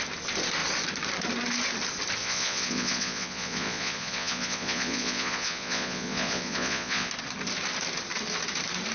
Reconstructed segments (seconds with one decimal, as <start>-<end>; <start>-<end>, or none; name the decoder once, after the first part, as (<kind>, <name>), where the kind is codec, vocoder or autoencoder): 2.2-7.1 (vocoder, Vocos)